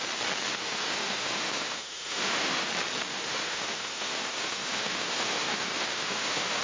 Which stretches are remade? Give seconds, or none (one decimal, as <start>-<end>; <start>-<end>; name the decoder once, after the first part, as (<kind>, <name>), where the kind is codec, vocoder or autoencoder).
0.5-2.7 (autoencoder, DAC-VAE); 3.1-6.6